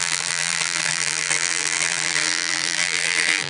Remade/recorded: remade